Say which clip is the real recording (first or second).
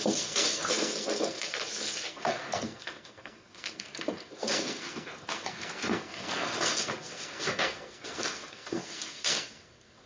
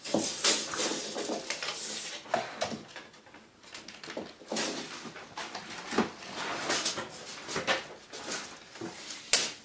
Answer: second